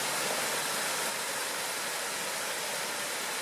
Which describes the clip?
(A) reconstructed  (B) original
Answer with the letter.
B